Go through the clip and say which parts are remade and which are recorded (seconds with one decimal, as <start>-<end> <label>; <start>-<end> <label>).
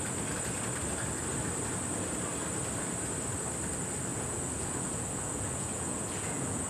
0.0-4.1 recorded; 4.1-6.7 remade